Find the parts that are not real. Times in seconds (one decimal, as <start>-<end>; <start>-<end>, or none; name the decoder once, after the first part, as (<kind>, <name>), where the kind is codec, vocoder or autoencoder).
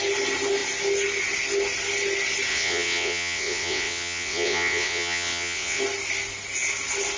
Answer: 2.5-5.8 (vocoder, WaveNeXt)